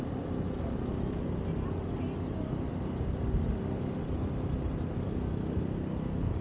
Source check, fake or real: real